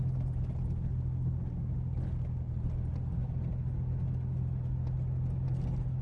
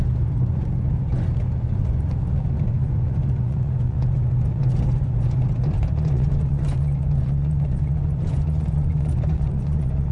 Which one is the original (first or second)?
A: first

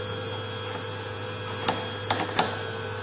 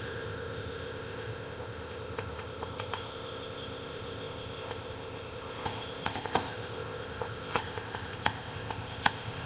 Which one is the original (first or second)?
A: first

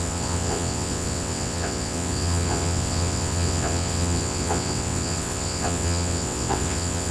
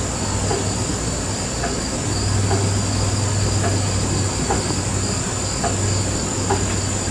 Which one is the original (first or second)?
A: second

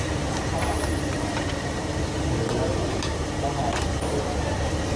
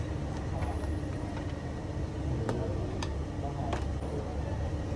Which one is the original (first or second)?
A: second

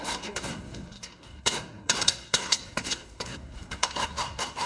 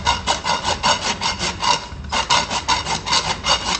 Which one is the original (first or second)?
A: second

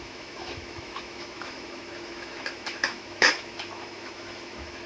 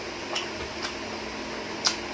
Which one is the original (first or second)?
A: second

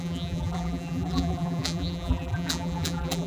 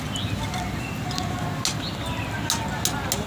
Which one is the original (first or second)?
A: second